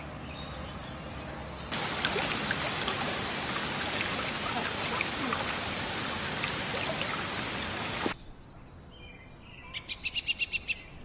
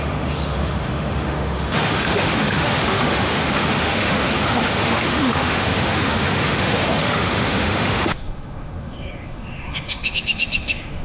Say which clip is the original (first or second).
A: first